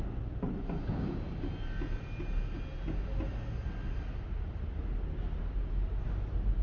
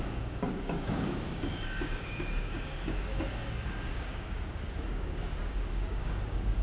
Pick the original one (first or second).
first